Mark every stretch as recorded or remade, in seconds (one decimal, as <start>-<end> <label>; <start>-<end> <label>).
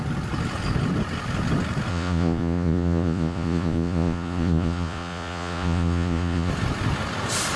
0.0-1.9 recorded; 1.9-6.5 remade; 6.5-7.6 recorded